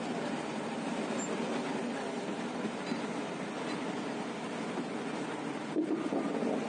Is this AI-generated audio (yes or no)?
no